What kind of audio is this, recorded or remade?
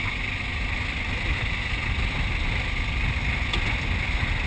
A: recorded